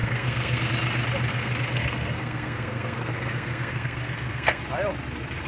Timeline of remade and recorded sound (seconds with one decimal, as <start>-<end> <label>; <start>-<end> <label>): 0.0-0.7 remade; 0.7-1.3 recorded; 1.3-4.6 remade; 4.6-5.5 recorded